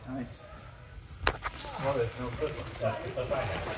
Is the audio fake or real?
real